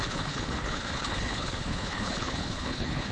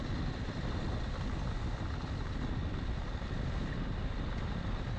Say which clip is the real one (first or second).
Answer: second